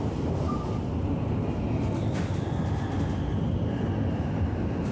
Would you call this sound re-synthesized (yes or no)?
no